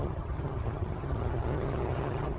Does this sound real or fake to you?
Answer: fake